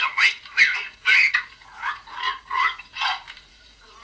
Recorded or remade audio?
remade